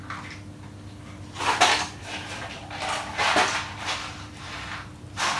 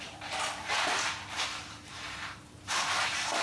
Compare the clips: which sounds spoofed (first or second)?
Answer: second